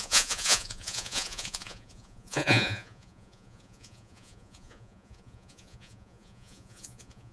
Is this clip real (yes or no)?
no